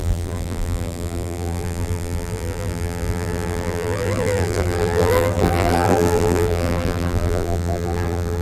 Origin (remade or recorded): remade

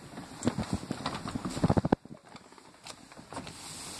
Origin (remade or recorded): recorded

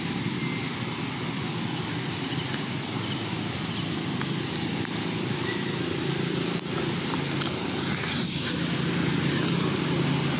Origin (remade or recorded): recorded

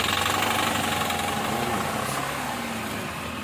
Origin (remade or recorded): recorded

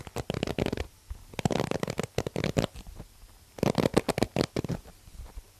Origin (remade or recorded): recorded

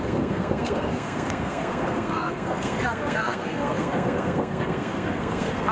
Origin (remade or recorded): remade